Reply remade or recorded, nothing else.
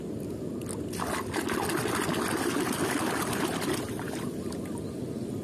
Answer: recorded